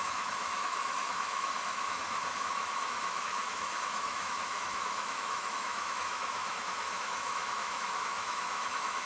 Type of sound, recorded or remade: remade